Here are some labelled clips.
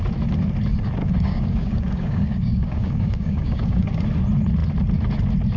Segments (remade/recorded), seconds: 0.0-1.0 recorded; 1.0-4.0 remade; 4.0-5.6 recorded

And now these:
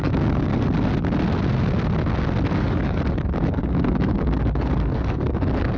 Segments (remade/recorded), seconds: 0.0-0.5 remade; 0.5-2.6 recorded; 2.6-5.8 remade

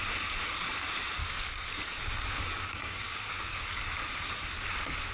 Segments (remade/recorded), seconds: 0.0-1.2 recorded; 1.2-3.8 remade; 3.8-5.1 recorded